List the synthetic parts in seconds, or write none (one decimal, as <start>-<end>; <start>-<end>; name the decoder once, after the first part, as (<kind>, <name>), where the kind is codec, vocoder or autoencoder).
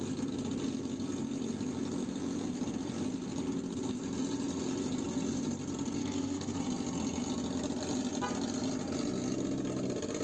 6.0-6.6 (codec, SNAC)